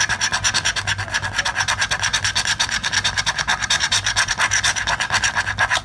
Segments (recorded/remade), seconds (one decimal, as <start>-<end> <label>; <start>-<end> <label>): 0.0-5.8 recorded